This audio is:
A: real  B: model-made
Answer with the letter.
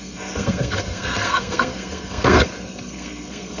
B